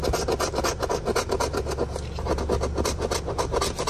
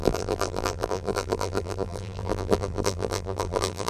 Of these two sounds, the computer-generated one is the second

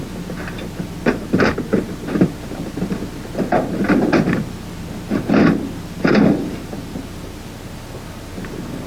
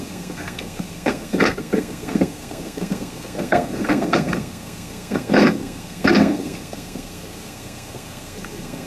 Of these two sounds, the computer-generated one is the second